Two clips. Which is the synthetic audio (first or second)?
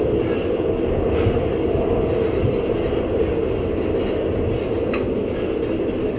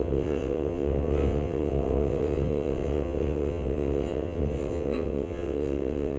second